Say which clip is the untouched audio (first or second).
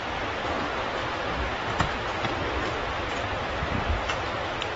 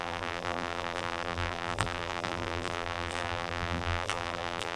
first